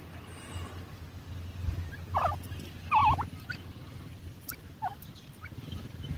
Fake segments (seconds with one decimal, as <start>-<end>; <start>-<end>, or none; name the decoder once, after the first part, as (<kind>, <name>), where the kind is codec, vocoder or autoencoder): none